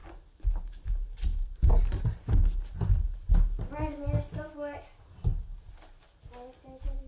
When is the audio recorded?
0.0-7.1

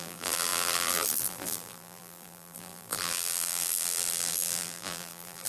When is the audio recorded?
none

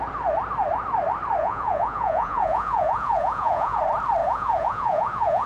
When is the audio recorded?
0.0-1.4; 3.8-4.2

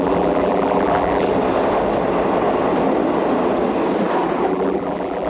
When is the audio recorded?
1.3-4.5

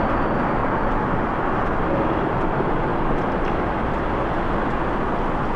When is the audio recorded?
0.0-5.6